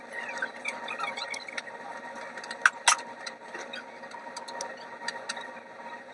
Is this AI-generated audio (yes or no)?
no